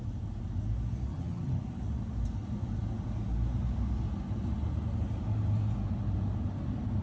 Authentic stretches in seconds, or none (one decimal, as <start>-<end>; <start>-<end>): 0.0-1.1; 1.6-7.0

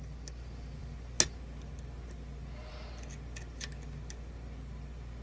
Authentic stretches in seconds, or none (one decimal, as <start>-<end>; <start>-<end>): 0.0-5.2

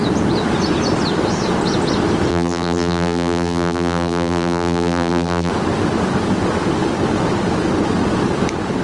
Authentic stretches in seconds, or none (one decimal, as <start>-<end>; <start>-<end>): 0.0-2.3; 5.5-8.8

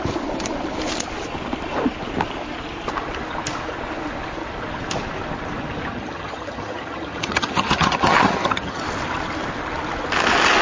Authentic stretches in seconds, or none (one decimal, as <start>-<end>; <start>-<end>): 0.0-5.9; 8.8-10.6

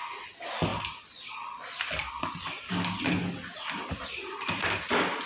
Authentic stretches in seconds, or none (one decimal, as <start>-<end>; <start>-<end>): 0.0-0.7; 3.9-5.3

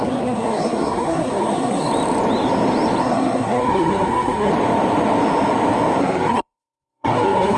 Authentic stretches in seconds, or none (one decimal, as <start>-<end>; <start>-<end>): 1.9-3.0; 4.5-6.0

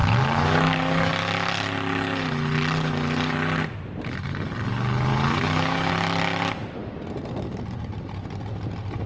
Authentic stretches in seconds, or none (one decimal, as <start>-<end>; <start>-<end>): 1.1-5.1; 5.9-9.1

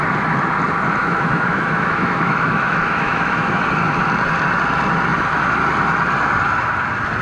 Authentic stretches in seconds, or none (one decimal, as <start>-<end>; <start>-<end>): 0.0-1.0; 3.6-7.2